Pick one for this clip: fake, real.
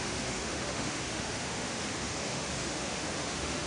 fake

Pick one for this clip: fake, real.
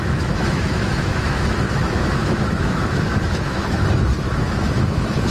fake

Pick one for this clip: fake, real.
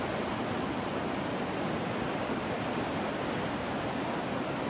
real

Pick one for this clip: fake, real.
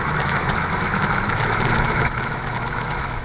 fake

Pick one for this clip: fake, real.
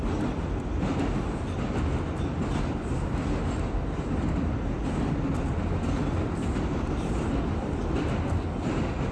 real